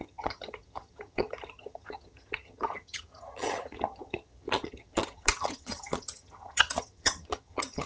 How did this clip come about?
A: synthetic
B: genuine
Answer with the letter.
A